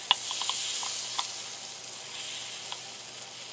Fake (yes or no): no